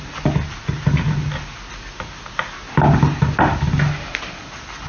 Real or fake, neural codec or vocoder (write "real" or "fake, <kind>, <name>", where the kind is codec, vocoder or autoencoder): real